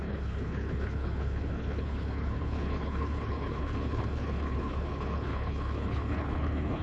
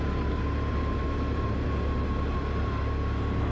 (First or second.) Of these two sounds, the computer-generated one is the first